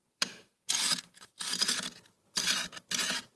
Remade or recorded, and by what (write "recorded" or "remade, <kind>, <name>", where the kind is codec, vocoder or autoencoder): remade, vocoder, BigVGAN v2